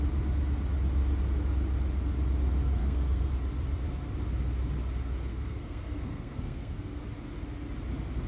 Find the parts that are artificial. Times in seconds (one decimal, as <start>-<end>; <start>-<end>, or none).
2.8-3.3; 5.3-7.0